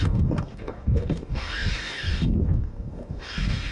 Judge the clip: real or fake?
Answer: fake